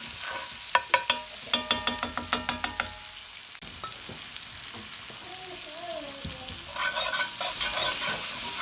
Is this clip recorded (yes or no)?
yes